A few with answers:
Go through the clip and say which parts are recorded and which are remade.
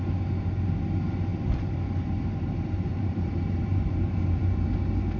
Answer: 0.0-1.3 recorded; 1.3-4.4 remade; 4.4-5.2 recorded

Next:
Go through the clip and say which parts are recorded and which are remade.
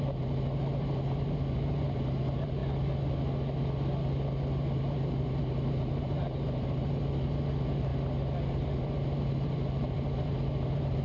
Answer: 0.0-2.6 remade; 2.6-4.8 recorded; 4.8-7.9 remade; 7.9-8.6 recorded; 8.6-11.0 remade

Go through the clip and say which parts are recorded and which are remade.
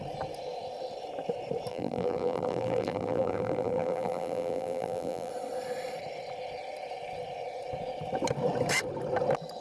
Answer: 0.0-1.7 recorded; 1.7-5.3 remade; 5.3-9.6 recorded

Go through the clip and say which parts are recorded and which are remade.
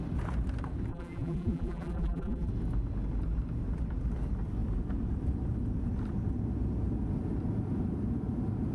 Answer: 0.0-0.9 recorded; 0.9-2.5 remade; 2.5-8.7 recorded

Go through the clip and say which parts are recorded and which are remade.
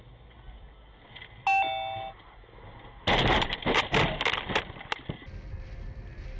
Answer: 0.0-6.4 recorded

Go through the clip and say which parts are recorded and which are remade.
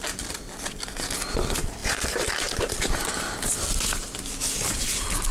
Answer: 0.0-5.3 recorded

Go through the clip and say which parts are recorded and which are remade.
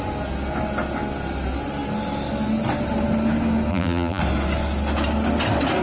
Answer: 0.0-3.7 recorded; 3.7-4.2 remade; 4.2-5.8 recorded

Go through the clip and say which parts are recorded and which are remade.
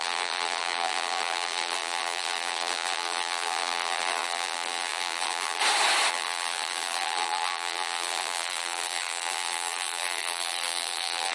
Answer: 0.0-5.6 remade; 5.6-6.1 recorded; 6.1-11.3 remade